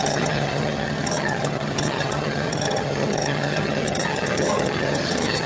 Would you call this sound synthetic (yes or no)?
yes